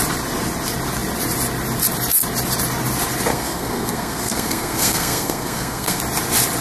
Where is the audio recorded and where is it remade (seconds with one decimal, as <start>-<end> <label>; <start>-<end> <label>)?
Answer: 0.0-3.3 recorded; 3.3-6.0 remade; 6.0-6.6 recorded